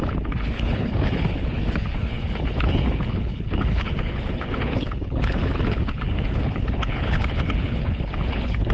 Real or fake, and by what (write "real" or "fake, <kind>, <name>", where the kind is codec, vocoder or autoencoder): fake, codec, HILCodec